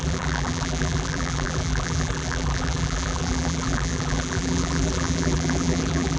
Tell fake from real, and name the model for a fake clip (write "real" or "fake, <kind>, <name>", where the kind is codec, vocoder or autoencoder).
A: fake, vocoder, BigVGAN v2